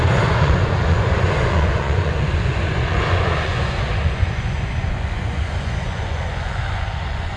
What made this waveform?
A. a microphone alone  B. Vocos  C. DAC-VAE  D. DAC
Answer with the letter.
B